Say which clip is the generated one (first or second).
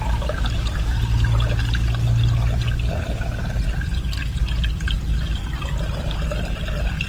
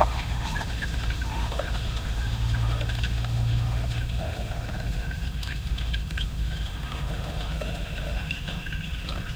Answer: second